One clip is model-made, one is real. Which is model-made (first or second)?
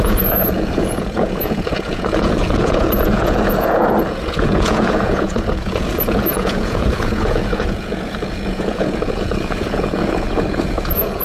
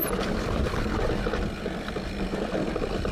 first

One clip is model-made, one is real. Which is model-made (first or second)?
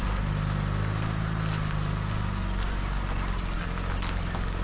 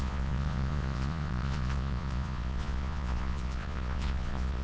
second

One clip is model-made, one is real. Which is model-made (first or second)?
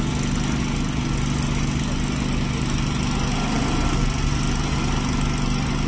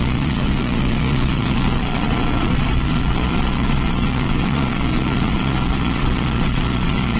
second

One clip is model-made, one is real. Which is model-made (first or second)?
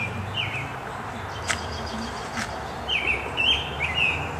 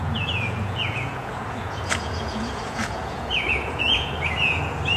second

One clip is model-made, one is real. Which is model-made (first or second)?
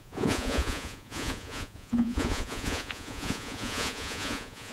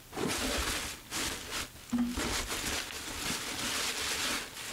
first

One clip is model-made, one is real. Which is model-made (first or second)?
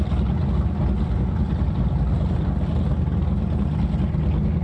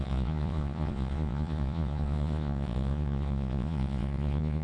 second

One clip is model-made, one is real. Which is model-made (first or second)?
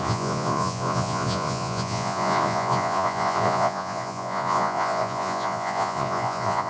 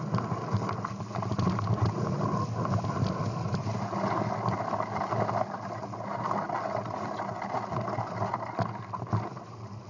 first